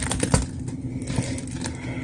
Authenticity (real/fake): real